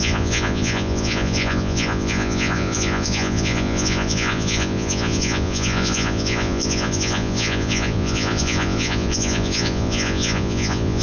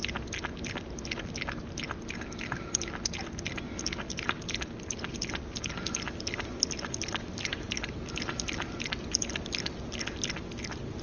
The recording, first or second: second